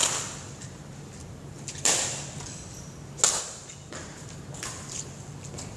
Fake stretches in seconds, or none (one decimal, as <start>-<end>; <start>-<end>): none